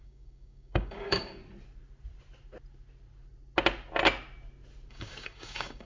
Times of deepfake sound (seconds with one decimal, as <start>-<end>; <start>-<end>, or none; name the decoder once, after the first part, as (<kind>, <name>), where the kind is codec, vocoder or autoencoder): 0.0-1.4 (codec, DAC); 4.9-5.9